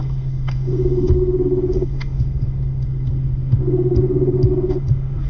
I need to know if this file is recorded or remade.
remade